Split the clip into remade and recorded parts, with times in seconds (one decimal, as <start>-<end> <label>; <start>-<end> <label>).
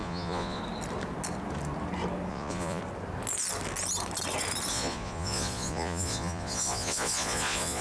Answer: 0.0-0.6 remade; 0.6-2.3 recorded; 2.3-2.8 remade; 2.8-4.7 recorded; 4.7-7.8 remade